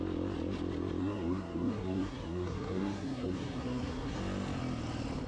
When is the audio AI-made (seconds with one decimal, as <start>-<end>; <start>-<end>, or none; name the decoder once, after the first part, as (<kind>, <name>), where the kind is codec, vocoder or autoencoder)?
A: 1.0-4.2 (codec, SNAC)